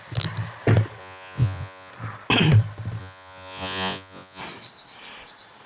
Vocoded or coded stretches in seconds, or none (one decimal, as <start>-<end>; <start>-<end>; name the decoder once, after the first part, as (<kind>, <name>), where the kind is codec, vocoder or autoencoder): 1.0-1.9 (vocoder, Vocos); 3.0-4.4